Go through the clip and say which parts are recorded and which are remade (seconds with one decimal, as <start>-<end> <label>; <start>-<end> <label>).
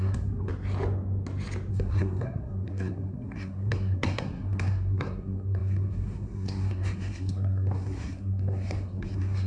0.0-0.5 remade; 0.5-1.7 recorded; 1.7-9.5 remade